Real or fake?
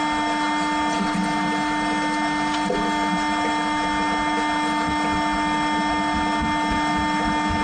real